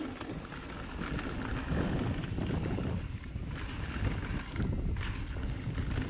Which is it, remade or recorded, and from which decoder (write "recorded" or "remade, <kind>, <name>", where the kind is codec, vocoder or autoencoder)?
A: recorded